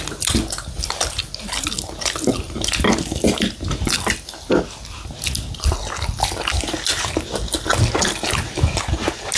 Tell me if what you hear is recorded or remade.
recorded